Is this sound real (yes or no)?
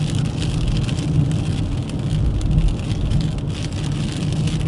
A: yes